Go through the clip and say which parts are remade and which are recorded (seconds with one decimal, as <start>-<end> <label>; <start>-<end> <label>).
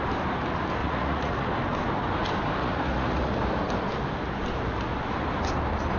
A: 0.0-0.8 recorded; 0.8-1.5 remade; 1.5-2.6 recorded; 2.6-3.3 remade; 3.3-6.0 recorded